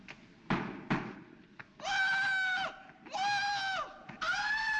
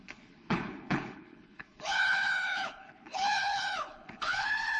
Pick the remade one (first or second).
second